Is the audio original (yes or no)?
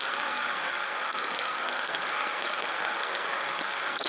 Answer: no